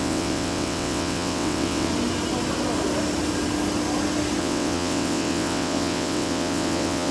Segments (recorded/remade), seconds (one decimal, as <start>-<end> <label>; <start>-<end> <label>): 0.0-1.9 remade; 1.9-4.4 recorded; 4.4-7.1 remade